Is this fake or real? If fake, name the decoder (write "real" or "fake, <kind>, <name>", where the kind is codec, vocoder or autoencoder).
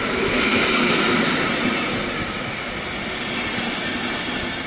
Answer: real